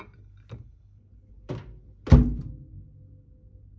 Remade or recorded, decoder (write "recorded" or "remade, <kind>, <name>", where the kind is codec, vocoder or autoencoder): recorded